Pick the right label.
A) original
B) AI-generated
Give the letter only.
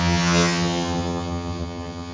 B